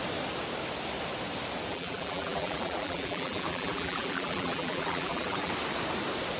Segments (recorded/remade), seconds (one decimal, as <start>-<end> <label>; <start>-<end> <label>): 0.0-1.7 recorded; 1.7-5.5 remade; 5.5-6.4 recorded